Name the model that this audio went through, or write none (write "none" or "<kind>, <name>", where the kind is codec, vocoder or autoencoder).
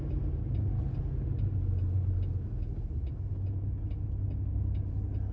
none